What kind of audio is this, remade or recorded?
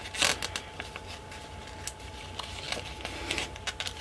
recorded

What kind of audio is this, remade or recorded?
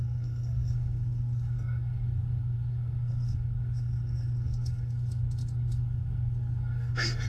remade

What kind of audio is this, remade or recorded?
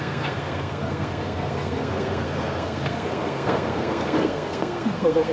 remade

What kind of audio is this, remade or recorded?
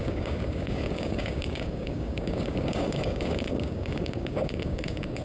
remade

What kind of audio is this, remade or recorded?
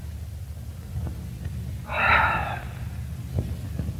recorded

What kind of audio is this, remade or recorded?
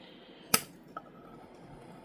recorded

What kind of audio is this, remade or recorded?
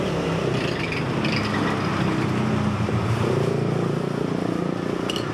recorded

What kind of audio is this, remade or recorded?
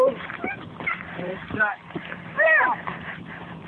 remade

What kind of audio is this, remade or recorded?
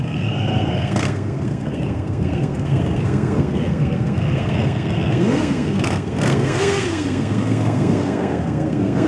remade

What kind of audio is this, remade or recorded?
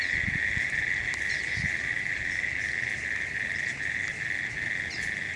recorded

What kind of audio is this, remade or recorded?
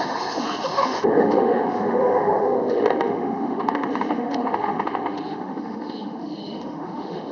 remade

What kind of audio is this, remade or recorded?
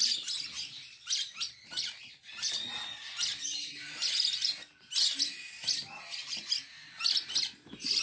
recorded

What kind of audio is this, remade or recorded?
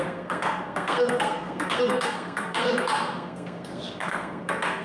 remade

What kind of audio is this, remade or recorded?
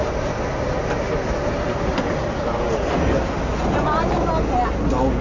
recorded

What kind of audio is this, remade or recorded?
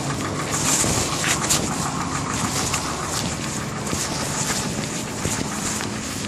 recorded